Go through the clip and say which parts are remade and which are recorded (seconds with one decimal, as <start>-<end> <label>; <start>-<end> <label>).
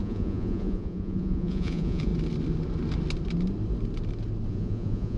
0.0-2.1 remade; 2.1-4.5 recorded; 4.5-5.2 remade